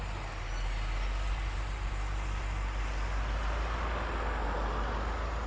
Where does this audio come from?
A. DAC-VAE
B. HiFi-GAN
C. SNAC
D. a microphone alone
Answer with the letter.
D